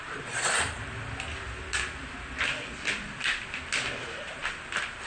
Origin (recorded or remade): recorded